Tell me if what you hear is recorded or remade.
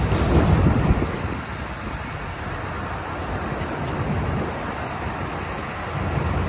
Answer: recorded